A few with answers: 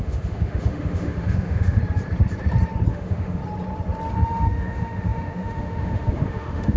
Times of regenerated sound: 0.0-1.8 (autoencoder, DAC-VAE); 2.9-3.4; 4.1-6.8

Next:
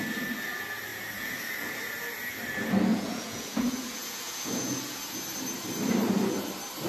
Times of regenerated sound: 2.9-5.0 (vocoder, Vocos)